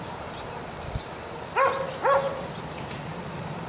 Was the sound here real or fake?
real